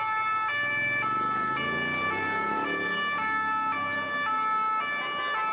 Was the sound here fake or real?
real